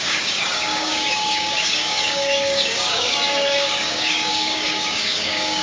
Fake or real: fake